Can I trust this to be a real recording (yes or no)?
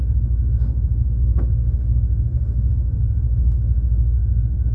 no